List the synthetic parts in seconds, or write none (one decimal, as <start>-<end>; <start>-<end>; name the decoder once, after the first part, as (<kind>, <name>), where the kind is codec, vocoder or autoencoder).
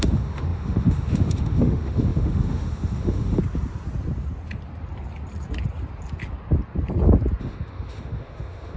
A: 0.0-3.4 (autoencoder, DAC-VAE); 7.4-8.8